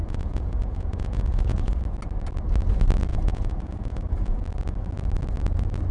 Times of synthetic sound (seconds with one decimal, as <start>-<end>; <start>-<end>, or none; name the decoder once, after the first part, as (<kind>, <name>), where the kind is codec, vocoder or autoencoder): 0.0-1.8 (vocoder, Vocos); 3.1-4.4